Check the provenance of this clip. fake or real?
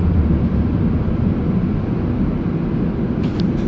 real